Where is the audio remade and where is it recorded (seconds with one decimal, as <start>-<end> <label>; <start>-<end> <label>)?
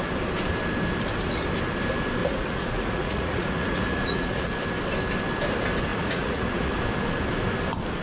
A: 0.0-2.2 recorded; 2.2-4.5 remade; 4.5-5.9 recorded; 5.9-6.7 remade; 6.7-8.0 recorded